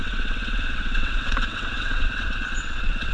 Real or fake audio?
fake